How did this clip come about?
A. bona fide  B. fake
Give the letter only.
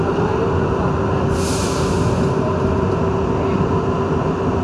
A